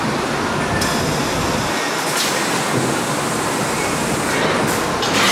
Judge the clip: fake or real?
real